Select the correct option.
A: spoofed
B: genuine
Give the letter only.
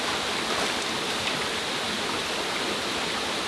B